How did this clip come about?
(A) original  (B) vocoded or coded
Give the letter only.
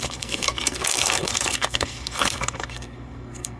B